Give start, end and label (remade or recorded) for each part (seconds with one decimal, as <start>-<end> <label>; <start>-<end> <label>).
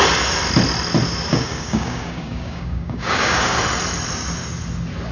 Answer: 0.0-1.3 recorded; 1.3-3.6 remade; 3.6-5.1 recorded